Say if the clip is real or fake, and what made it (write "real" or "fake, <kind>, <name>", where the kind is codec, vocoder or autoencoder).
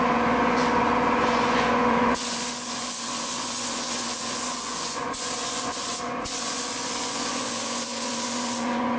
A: fake, vocoder, Vocos